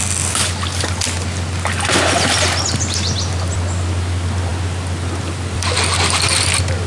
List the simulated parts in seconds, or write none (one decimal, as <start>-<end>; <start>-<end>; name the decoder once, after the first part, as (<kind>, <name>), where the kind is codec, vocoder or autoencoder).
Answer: none